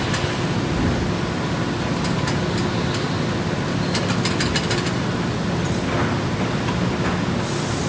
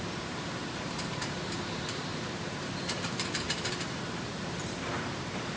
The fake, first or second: second